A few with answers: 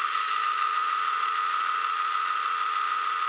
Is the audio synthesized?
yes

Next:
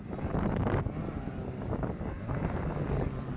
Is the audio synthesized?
no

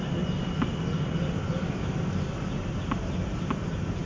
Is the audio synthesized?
no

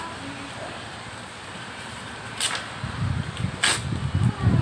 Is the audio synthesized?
no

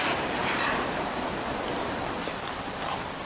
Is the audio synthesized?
no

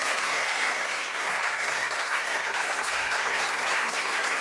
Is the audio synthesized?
yes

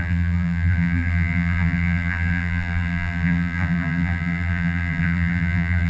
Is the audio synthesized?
yes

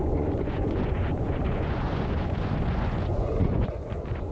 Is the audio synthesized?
yes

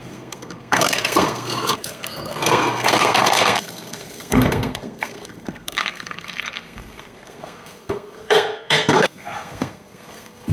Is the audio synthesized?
yes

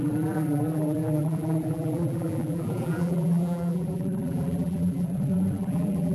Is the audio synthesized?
yes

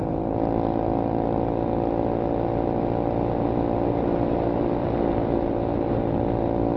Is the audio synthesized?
no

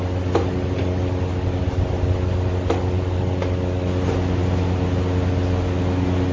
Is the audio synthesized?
no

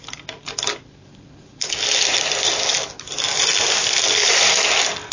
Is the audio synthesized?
no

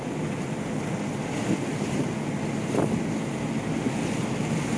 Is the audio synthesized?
no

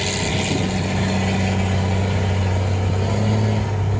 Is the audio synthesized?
no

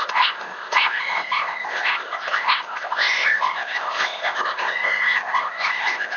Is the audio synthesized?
yes